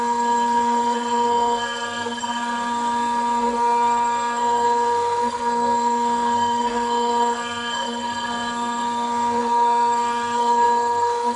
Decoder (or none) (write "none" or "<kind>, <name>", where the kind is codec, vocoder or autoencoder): codec, SNAC